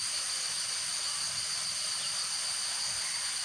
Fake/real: real